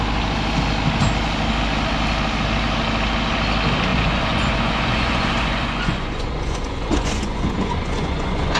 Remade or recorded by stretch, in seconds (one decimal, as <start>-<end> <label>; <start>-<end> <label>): 0.0-3.9 recorded; 3.9-8.6 remade